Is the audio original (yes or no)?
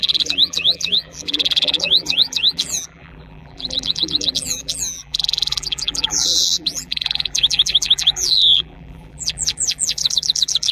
no